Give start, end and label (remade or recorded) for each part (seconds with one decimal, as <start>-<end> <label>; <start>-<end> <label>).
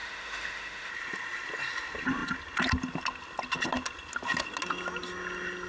0.0-0.9 remade; 0.9-5.7 recorded